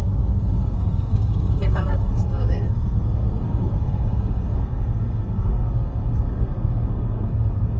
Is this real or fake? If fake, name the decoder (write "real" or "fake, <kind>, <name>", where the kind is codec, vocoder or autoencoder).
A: fake, codec, SNAC